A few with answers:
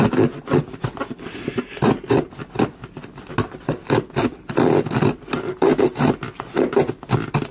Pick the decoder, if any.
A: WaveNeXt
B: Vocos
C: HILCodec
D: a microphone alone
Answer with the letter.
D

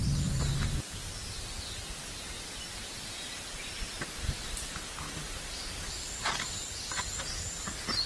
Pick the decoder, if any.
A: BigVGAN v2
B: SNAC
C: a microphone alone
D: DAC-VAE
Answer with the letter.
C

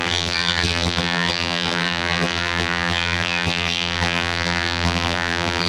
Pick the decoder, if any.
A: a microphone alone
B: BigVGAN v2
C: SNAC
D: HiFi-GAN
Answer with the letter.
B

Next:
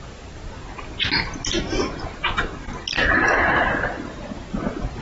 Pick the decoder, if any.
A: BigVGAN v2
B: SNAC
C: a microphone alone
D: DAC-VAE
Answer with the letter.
C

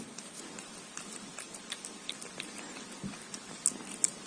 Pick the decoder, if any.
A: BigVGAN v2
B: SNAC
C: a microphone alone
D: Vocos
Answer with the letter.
C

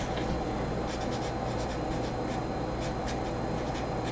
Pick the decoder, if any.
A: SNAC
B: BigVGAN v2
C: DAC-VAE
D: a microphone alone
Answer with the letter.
D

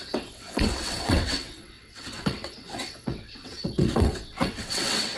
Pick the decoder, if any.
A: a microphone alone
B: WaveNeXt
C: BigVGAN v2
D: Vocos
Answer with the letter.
B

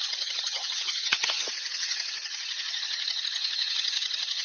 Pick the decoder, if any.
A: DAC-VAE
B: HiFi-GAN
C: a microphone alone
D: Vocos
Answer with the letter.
B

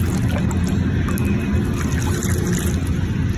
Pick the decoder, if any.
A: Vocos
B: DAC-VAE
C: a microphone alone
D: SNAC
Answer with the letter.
C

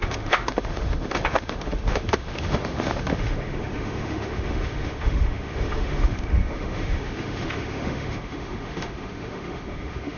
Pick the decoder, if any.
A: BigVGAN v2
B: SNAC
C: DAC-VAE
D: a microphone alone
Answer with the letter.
C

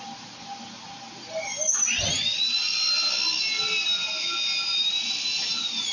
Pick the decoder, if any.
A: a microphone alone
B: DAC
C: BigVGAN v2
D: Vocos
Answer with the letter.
A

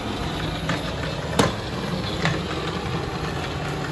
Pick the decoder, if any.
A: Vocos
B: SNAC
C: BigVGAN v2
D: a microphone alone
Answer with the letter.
D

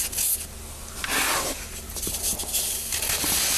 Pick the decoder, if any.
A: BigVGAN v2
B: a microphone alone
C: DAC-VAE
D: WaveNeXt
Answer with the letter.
B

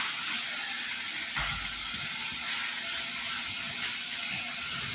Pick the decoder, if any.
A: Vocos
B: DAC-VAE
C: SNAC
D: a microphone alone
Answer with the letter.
D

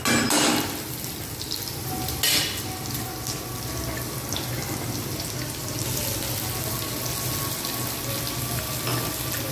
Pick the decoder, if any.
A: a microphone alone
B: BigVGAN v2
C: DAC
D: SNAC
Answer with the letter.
A